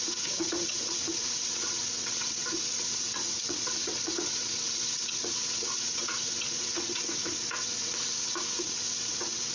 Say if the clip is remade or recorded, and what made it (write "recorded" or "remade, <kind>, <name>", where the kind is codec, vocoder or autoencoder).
remade, vocoder, WaveNeXt